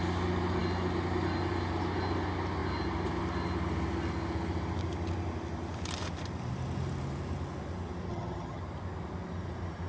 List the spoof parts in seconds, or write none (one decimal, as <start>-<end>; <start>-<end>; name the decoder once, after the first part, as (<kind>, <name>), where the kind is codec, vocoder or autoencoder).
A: 8.1-8.6 (vocoder, HiFi-GAN)